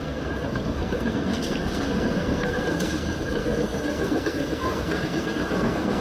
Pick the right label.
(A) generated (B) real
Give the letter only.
A